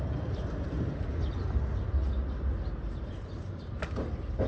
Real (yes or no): yes